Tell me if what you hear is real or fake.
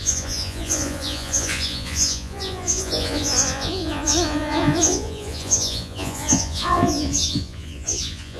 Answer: fake